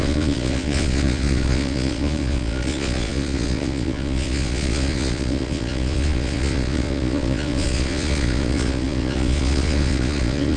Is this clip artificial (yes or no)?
yes